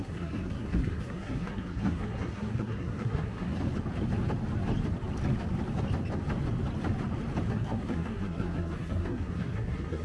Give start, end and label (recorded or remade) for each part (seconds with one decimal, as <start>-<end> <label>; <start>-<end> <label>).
0.0-3.6 remade; 3.6-7.5 recorded; 7.5-10.0 remade